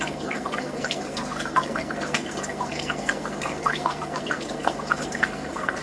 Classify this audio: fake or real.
fake